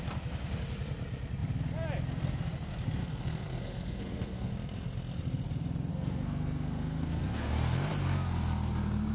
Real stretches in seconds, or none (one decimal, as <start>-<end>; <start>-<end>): 0.0-3.0; 4.5-5.9; 7.5-9.1